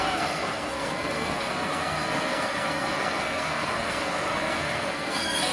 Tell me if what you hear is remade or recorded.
remade